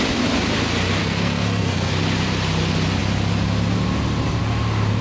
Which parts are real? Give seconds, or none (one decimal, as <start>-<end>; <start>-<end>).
0.0-1.0; 1.9-5.0